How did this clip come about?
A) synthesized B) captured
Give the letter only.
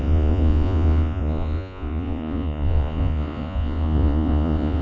A